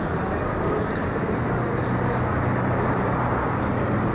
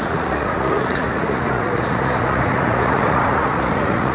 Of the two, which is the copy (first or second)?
second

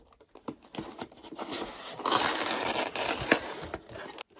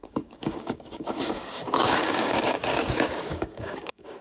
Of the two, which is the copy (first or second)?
second